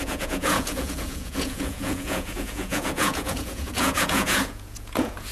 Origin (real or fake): fake